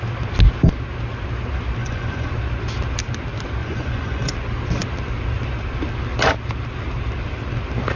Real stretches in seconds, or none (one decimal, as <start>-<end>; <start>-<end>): 0.0-1.8; 2.3-3.6; 4.3-8.0